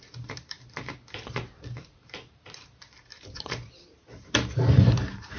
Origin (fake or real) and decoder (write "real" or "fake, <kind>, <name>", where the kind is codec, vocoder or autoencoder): fake, vocoder, BigVGAN v2